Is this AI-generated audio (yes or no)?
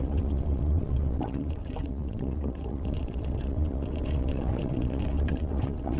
yes